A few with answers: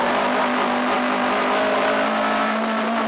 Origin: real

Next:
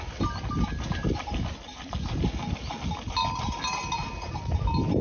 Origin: real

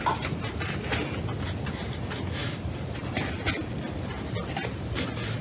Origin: real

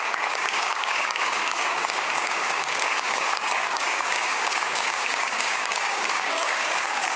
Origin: fake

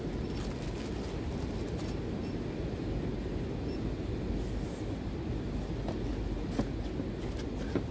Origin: real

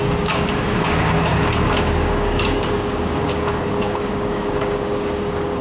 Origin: fake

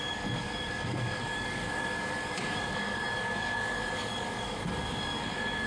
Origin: fake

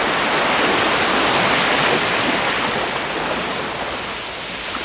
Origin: real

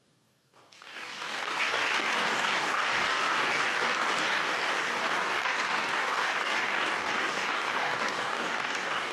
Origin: fake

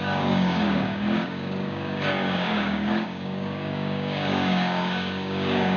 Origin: fake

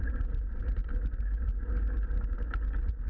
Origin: real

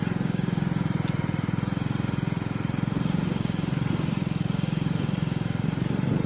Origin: real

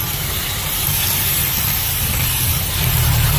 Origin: real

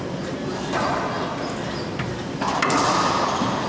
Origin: real